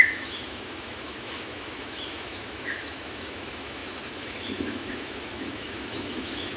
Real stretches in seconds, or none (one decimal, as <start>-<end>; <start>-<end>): none